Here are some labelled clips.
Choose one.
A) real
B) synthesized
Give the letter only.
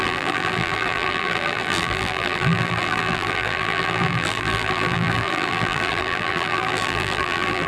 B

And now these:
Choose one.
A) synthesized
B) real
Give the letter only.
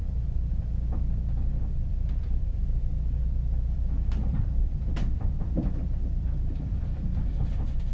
A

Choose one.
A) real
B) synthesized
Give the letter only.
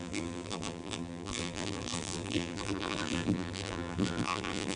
B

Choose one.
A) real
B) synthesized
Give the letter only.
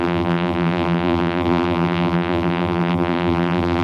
B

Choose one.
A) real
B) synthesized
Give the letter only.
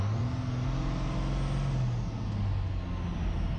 A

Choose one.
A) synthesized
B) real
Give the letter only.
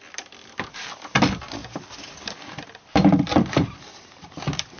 A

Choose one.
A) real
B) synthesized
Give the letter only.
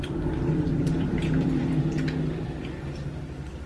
B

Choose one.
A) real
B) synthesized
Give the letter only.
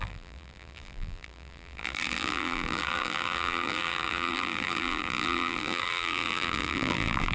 B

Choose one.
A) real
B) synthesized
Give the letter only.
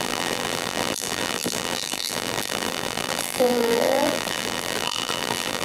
B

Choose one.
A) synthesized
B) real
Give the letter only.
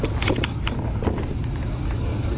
B